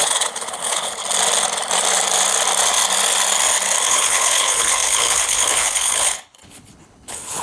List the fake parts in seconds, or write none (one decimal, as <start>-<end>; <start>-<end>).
0.0-1.0; 3.9-7.4